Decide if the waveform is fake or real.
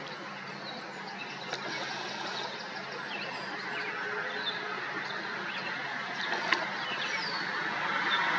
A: real